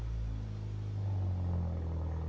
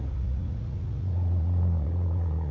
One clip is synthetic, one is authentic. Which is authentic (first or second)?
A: first